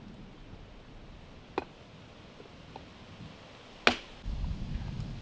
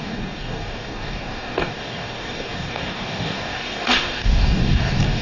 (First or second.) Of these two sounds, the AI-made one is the second